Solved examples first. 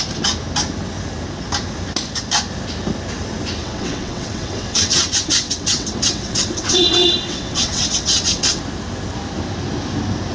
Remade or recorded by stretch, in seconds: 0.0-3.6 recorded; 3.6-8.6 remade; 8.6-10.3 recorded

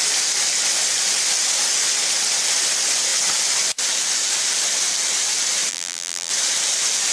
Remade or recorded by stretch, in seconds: 0.0-5.7 recorded; 5.7-6.3 remade; 6.3-7.1 recorded